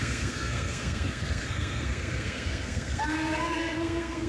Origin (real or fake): fake